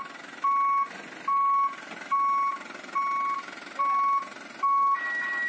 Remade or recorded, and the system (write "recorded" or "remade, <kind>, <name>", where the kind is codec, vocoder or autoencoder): recorded